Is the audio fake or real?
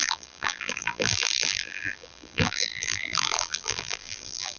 fake